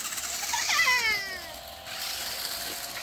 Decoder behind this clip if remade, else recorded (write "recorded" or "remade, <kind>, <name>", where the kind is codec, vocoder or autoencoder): recorded